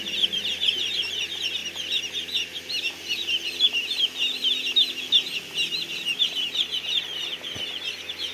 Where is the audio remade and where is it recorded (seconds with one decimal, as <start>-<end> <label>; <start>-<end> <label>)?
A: 0.0-8.3 recorded